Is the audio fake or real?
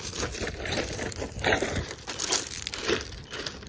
fake